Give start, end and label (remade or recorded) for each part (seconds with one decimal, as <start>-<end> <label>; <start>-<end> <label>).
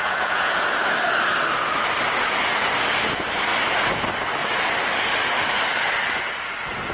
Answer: 0.0-0.5 remade; 0.5-6.9 recorded